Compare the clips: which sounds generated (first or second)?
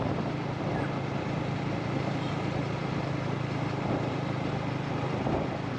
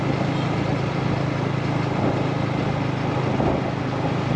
first